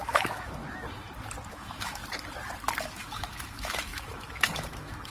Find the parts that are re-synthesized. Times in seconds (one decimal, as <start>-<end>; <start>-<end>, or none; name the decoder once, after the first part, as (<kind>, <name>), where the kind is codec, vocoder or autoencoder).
0.0-0.6 (autoencoder, DAC-VAE); 1.5-2.0; 2.8-5.1